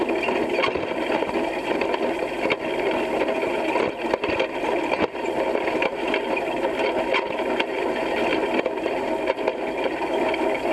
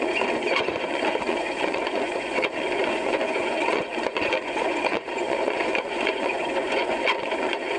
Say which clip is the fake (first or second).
second